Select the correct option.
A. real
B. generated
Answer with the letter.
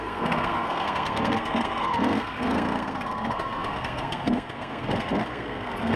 B